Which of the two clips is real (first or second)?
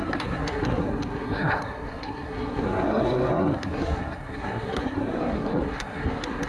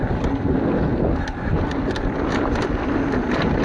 second